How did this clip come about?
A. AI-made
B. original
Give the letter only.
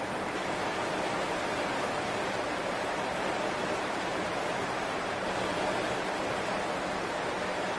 A